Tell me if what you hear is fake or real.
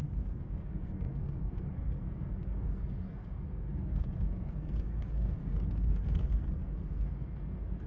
fake